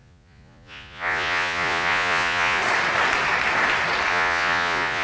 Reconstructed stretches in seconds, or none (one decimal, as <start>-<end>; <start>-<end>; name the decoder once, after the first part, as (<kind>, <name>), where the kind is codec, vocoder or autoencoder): 0.0-2.6 (vocoder, Vocos); 4.1-5.0